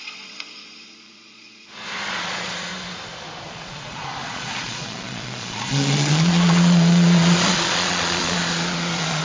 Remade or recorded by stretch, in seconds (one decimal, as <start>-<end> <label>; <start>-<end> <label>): 0.0-2.7 remade; 2.7-3.5 recorded; 3.5-9.2 remade